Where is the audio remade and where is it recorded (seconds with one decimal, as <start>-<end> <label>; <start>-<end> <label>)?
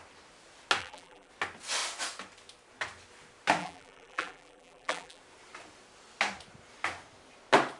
0.0-0.8 recorded; 0.8-1.3 remade; 1.3-3.6 recorded; 3.6-5.2 remade; 5.2-7.8 recorded